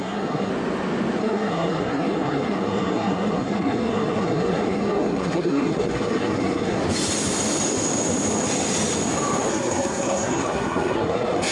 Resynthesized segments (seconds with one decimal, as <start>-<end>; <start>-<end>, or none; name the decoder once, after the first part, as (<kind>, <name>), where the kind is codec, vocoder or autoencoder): 0.0-0.5 (codec, SNAC); 1.2-6.8; 9.5-11.5